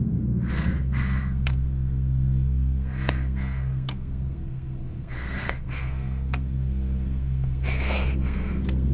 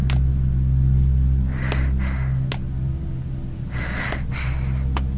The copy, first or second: first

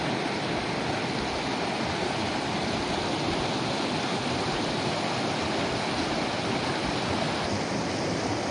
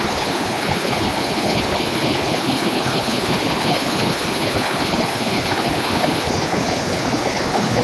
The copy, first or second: second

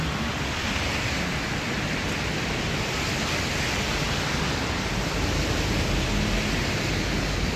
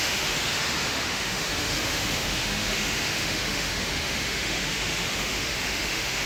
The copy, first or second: second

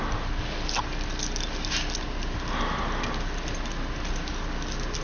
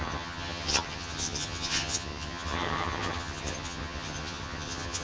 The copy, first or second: second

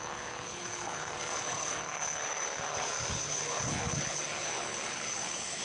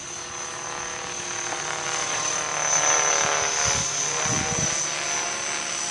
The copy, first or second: first